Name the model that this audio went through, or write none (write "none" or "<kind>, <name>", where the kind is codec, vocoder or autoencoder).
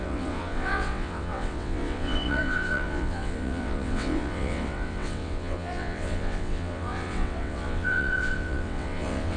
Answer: vocoder, WaveNeXt